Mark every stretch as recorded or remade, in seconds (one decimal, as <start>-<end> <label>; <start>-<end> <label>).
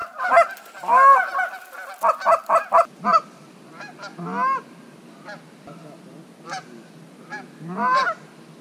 0.0-8.6 recorded